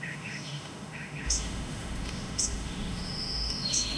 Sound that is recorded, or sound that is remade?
remade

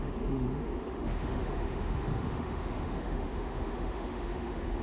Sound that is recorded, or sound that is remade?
remade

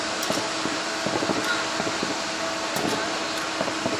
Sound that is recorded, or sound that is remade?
recorded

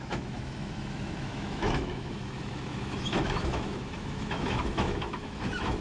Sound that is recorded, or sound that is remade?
remade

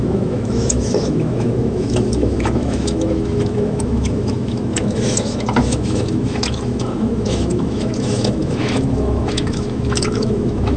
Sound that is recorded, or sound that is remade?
remade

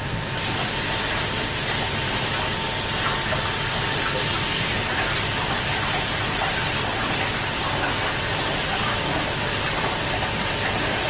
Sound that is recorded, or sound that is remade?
recorded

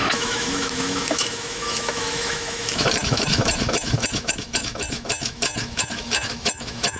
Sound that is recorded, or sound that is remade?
remade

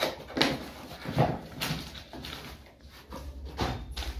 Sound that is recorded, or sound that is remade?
recorded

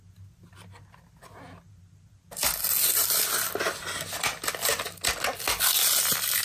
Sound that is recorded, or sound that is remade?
recorded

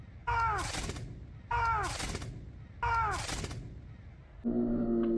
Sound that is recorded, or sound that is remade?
recorded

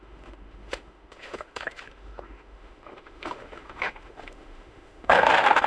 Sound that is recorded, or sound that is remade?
remade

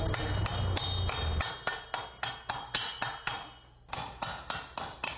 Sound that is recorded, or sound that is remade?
recorded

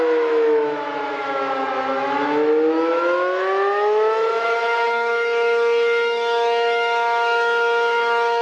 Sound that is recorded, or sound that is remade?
remade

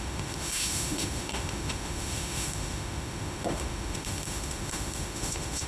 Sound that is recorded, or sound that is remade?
remade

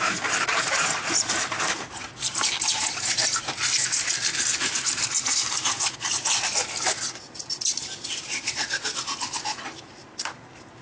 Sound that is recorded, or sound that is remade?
recorded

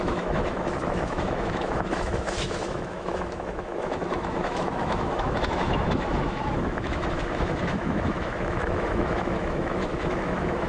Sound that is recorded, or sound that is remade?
remade